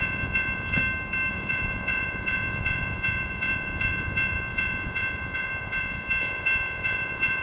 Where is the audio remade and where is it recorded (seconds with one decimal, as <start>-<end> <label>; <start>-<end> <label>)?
0.0-0.8 remade; 0.8-1.3 recorded; 1.3-7.4 remade